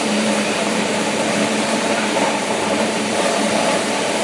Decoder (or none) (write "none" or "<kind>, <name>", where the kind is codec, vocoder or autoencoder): vocoder, BigVGAN v2